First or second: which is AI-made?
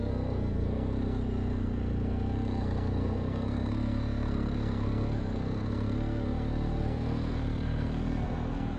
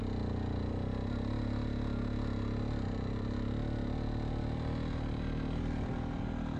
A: first